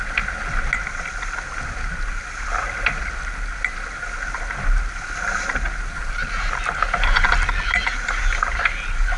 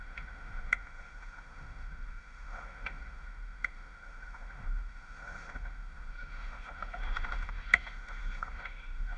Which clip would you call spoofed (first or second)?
second